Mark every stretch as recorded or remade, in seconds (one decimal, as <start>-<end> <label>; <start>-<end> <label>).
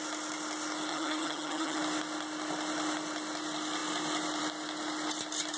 0.0-0.9 recorded; 0.9-1.8 remade; 1.8-5.6 recorded